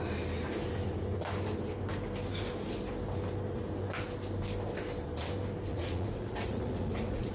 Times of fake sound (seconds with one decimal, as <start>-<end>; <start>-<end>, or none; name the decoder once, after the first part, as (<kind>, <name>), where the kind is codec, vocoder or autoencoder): 5.7-7.3 (vocoder, Vocos)